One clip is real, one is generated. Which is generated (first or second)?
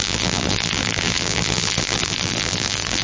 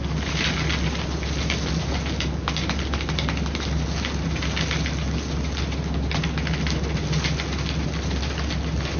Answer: first